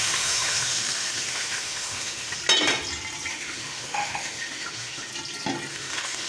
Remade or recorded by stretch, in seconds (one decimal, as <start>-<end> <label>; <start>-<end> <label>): 0.0-2.4 remade; 2.4-3.3 recorded; 3.3-5.1 remade; 5.1-5.7 recorded; 5.7-6.3 remade